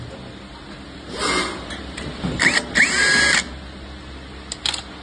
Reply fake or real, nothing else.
real